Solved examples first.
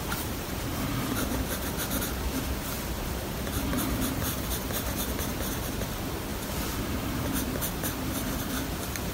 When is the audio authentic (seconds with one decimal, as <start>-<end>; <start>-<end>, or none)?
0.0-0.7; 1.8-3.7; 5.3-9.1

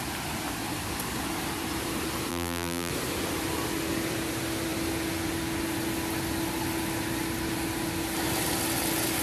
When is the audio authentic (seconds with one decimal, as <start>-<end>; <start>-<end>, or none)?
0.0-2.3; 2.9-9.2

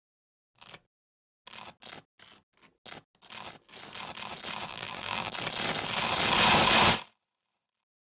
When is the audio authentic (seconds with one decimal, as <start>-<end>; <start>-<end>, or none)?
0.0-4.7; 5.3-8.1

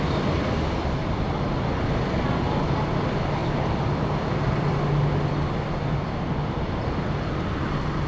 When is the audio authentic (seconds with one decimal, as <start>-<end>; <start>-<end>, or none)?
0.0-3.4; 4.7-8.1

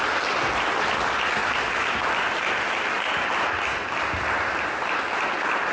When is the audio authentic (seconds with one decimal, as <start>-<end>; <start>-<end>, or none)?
0.0-5.7

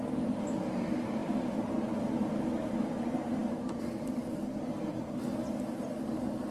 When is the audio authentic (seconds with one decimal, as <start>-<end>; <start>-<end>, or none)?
0.0-6.5